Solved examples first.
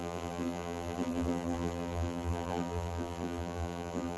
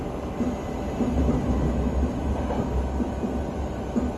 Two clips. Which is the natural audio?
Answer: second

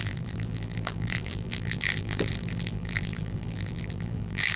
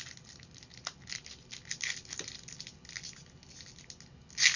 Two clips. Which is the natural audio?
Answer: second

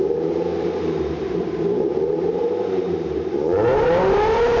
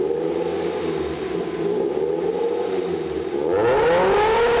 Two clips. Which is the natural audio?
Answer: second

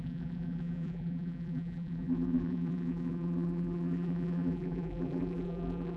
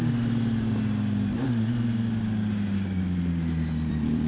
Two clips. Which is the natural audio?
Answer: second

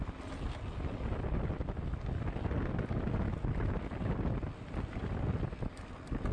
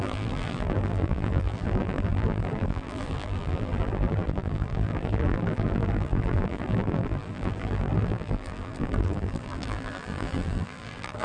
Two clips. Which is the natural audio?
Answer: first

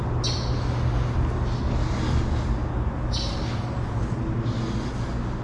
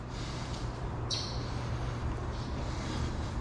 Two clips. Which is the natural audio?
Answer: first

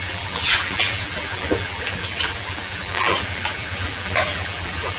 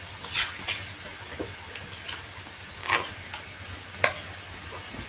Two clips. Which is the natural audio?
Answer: second